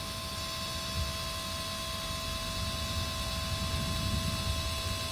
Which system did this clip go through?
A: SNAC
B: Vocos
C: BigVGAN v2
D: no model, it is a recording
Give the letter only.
D